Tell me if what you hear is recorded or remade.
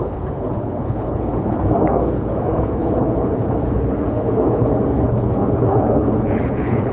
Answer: remade